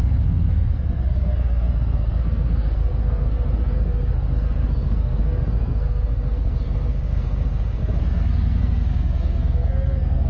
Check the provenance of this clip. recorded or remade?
remade